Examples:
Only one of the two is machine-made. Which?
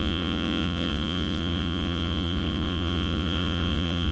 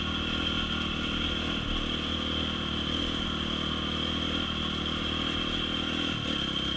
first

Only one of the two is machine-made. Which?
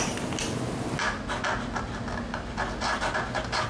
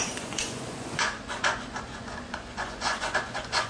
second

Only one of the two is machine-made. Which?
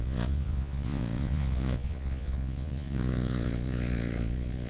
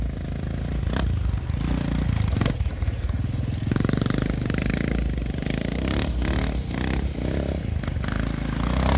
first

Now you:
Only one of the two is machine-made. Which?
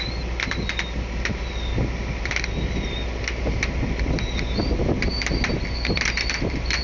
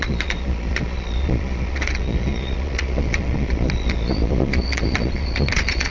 second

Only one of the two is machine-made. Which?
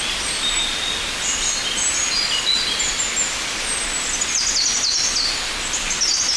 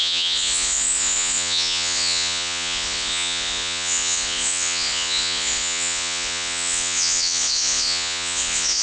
second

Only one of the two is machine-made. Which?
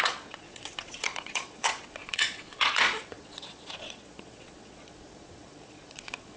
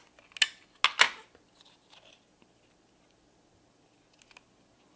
first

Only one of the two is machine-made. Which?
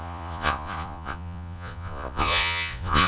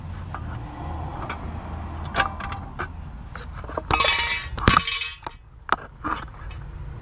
first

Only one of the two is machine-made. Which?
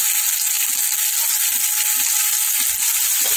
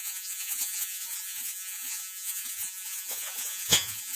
second